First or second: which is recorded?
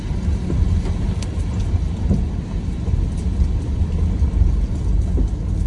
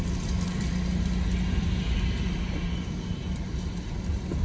first